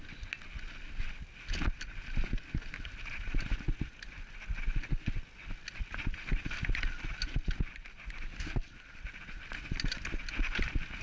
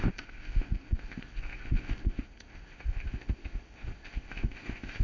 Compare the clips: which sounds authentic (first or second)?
first